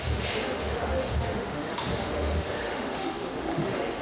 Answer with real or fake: fake